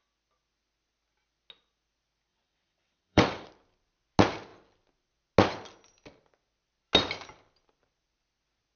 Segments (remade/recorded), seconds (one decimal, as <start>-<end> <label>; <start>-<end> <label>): 0.0-2.3 recorded; 2.3-3.5 remade; 3.5-8.8 recorded